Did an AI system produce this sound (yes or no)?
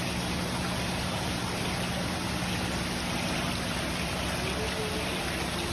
no